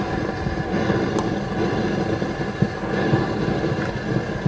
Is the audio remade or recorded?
recorded